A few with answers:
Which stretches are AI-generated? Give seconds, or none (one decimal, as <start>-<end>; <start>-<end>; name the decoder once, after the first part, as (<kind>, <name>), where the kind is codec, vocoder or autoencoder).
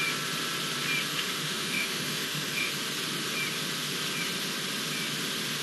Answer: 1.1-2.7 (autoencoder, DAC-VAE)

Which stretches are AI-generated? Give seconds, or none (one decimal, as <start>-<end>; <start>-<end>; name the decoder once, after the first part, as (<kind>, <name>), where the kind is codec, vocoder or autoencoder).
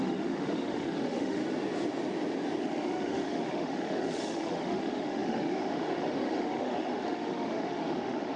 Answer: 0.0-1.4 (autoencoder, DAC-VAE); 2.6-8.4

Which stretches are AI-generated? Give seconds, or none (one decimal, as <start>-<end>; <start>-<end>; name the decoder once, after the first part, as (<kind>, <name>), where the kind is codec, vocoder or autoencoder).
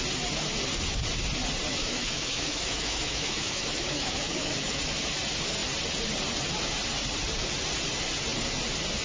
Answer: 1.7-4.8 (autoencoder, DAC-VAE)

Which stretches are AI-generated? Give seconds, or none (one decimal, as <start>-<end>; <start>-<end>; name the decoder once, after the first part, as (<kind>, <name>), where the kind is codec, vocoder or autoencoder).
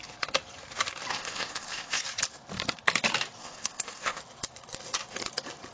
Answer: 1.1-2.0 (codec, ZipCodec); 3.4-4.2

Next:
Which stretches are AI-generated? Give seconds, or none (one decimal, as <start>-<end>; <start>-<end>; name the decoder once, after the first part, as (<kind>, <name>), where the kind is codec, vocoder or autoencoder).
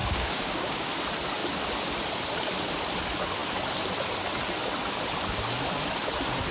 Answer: 0.0-0.9 (codec, DAC)